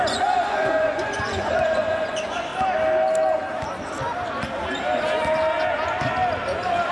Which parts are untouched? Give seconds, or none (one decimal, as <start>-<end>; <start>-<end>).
2.5-6.9